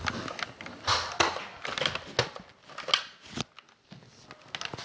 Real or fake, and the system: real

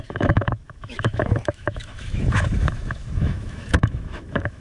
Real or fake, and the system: fake, autoencoder, DAC-VAE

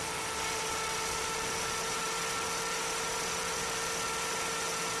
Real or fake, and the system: real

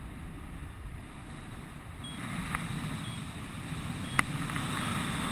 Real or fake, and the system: real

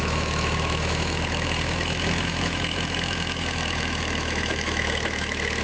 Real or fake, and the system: fake, autoencoder, DAC-VAE